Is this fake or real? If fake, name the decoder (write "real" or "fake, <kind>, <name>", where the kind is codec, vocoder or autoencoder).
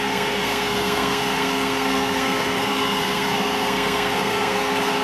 fake, codec, SNAC